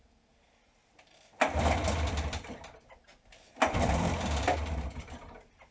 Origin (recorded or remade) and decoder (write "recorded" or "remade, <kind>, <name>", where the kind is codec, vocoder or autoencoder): remade, vocoder, BigVGAN v2